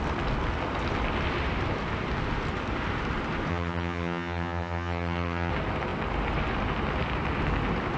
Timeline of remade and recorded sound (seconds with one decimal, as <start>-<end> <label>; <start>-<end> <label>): 0.0-3.5 recorded; 3.5-5.5 remade; 5.5-8.0 recorded